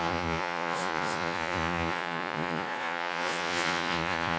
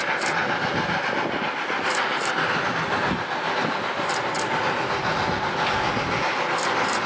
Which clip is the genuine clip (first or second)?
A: second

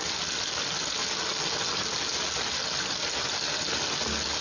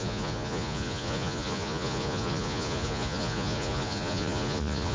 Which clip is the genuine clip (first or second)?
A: first